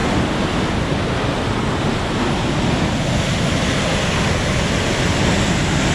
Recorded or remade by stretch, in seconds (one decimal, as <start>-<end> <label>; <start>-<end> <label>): 0.0-5.9 recorded